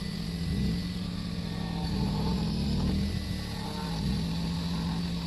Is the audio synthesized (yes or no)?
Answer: no